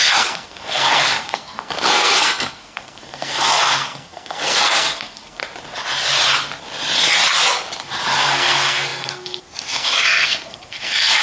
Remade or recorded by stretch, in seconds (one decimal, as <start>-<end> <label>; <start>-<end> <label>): 0.0-5.4 remade; 5.4-8.2 recorded; 8.2-11.2 remade